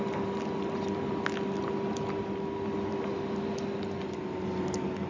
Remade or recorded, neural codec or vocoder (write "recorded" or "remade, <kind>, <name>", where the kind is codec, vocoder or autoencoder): recorded